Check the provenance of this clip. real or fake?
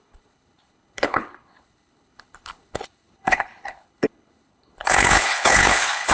fake